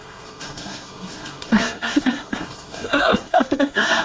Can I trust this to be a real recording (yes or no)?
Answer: no